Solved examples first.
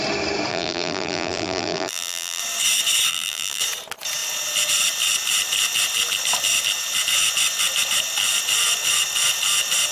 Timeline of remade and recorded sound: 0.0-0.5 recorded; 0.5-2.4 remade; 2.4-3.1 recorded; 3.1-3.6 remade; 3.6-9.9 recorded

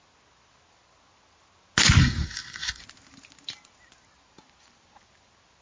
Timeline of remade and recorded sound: 0.0-2.0 recorded; 2.0-2.8 remade; 2.8-5.6 recorded

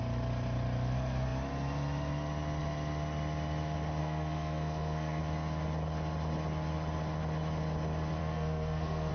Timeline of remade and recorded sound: 0.0-4.0 recorded; 4.0-5.2 remade; 5.2-8.2 recorded; 8.2-9.1 remade

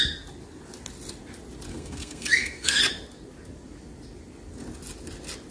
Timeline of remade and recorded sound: 0.0-1.7 recorded; 1.7-2.8 remade; 2.8-5.5 recorded

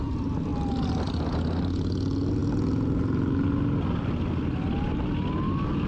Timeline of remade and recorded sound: 0.0-5.9 recorded

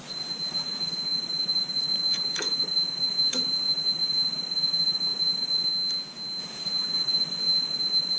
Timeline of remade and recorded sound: 0.0-5.7 remade; 5.7-6.4 recorded; 6.4-8.2 remade